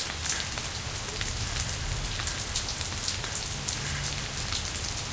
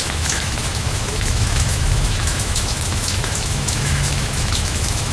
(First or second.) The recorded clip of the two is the first